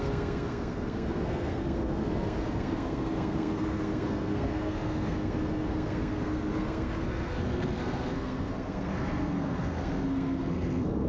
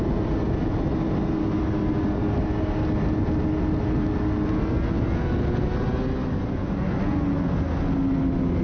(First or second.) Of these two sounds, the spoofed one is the first